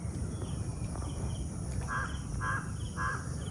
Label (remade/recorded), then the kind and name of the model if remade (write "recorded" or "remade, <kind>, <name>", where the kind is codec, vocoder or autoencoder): remade, vocoder, BigVGAN v2